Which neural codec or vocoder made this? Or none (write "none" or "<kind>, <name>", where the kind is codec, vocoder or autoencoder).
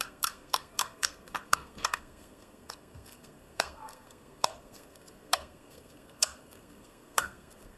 codec, SNAC